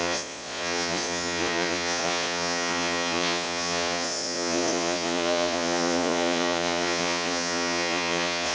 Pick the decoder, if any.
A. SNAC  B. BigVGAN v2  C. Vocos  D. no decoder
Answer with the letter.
C